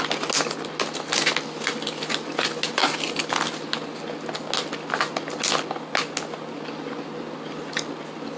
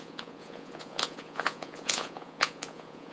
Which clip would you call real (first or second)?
first